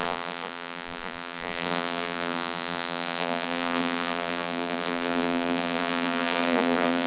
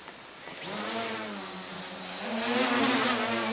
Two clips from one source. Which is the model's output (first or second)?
first